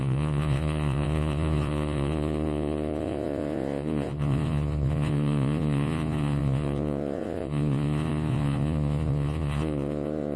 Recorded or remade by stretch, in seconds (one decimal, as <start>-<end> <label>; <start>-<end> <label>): 0.0-10.4 remade